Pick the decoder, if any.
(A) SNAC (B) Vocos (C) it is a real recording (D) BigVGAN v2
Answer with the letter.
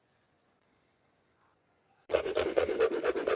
B